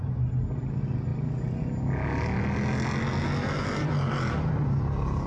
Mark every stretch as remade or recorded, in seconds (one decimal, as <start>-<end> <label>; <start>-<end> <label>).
0.0-5.3 recorded